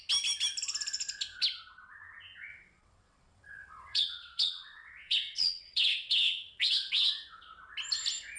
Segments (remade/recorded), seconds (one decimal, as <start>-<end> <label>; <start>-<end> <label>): 0.0-2.5 recorded; 2.5-7.4 remade; 7.4-8.4 recorded